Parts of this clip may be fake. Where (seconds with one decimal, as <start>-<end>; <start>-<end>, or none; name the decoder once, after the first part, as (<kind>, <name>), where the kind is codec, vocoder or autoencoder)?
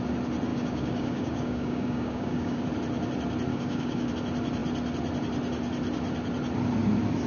0.5-2.6 (codec, DAC); 3.5-4.1